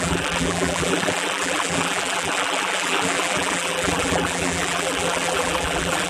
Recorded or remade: remade